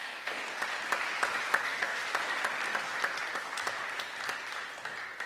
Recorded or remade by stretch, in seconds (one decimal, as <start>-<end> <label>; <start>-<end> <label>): 0.0-0.4 remade; 0.4-1.6 recorded; 1.6-2.0 remade; 2.0-5.3 recorded